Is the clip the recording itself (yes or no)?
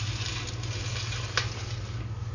yes